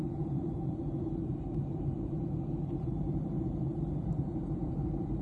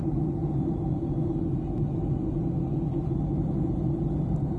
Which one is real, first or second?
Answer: second